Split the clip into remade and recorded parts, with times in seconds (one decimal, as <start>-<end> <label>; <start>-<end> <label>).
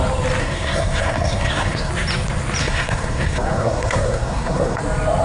0.0-0.4 recorded; 0.4-1.9 remade; 1.9-2.6 recorded; 2.6-4.8 remade; 4.8-5.2 recorded